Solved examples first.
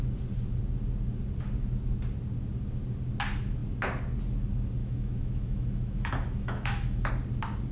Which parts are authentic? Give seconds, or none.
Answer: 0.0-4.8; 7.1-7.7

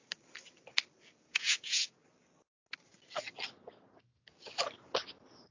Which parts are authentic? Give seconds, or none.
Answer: 0.0-1.3; 2.0-5.5

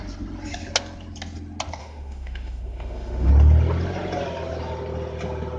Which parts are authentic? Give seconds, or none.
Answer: 0.0-1.8; 3.3-5.6